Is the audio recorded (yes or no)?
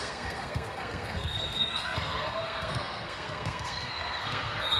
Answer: no